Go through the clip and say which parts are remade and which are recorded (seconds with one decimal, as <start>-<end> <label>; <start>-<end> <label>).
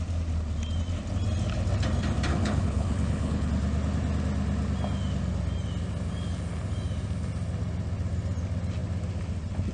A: 0.0-2.3 recorded; 2.3-3.5 remade; 3.5-9.7 recorded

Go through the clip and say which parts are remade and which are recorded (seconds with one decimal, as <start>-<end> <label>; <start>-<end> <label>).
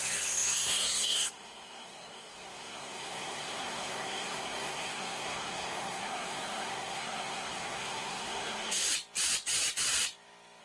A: 0.0-8.9 remade; 8.9-10.6 recorded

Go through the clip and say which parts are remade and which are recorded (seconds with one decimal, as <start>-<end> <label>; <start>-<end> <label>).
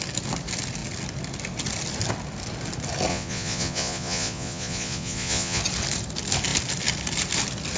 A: 0.0-3.1 recorded; 3.1-5.6 remade; 5.6-7.8 recorded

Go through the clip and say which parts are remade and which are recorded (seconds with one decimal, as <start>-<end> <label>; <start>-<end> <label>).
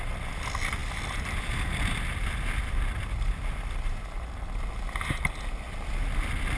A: 0.0-6.6 recorded